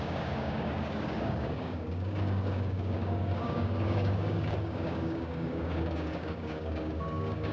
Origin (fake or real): fake